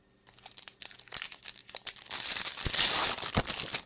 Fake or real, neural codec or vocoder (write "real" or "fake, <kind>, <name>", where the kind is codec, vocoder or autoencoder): real